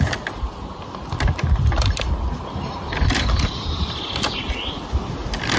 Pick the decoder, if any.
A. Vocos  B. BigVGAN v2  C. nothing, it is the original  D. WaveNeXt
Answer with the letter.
C